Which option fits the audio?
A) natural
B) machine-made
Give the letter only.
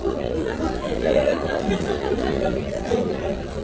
B